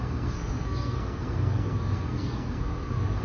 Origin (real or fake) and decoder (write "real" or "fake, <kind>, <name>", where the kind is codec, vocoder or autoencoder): fake, codec, SNAC